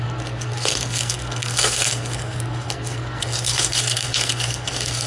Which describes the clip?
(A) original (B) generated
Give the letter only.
B